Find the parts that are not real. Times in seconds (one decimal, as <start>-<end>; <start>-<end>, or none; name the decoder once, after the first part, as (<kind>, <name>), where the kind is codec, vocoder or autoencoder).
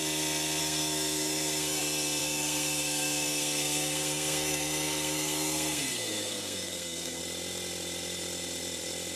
0.6-1.8 (codec, SNAC); 2.2-7.2